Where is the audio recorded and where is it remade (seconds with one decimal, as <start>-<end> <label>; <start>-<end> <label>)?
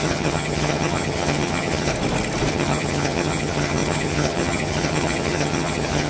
0.0-1.9 remade; 1.9-2.5 recorded; 2.5-6.1 remade